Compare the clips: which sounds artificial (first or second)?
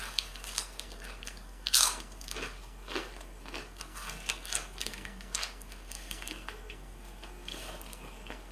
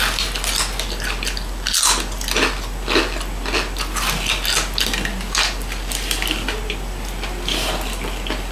first